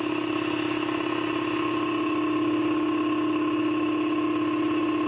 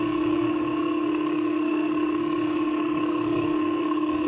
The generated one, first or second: second